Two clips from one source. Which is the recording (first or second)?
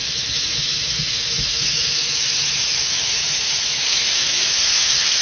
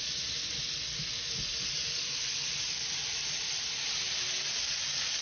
second